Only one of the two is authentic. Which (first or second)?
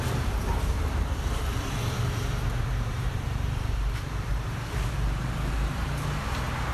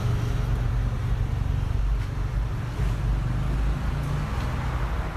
second